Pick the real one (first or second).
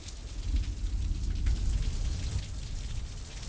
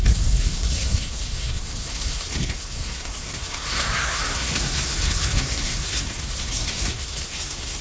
first